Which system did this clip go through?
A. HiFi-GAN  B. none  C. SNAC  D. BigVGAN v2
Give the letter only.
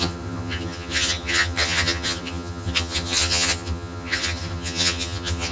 A